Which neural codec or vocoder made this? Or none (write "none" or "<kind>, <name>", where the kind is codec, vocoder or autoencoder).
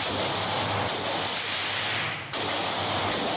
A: none